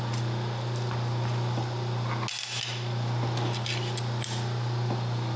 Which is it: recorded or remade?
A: recorded